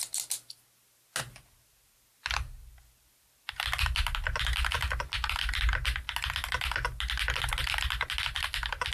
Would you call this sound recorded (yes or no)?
yes